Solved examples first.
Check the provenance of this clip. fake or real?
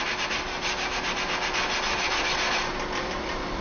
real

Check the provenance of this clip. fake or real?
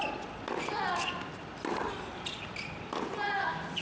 real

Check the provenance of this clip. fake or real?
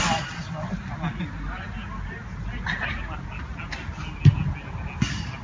real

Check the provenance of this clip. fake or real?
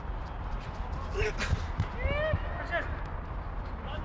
real